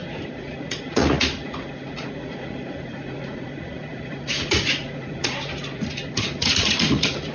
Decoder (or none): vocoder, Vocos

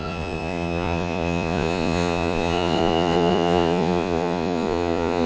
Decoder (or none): vocoder, Vocos